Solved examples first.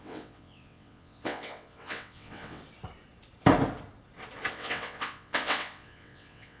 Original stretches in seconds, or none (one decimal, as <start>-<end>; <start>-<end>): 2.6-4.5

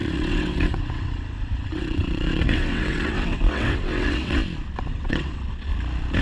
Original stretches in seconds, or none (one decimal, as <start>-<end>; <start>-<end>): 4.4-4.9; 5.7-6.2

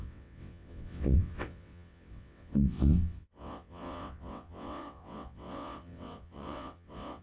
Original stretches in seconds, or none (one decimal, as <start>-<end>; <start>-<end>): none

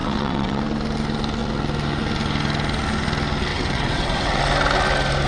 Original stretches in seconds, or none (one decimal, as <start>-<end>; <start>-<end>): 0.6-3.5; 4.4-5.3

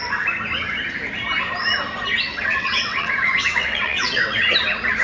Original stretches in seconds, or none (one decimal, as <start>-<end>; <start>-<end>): 0.0-2.3; 4.4-5.0

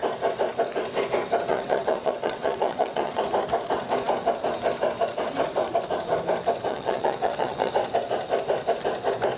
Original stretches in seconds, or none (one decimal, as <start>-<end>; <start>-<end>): 0.0-1.5; 3.2-6.7; 7.7-9.4

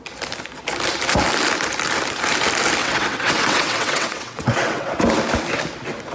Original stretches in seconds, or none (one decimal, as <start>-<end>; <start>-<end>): 0.0-2.8; 5.0-6.1